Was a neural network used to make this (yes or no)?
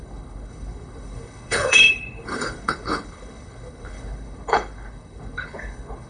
yes